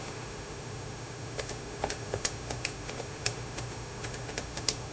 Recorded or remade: remade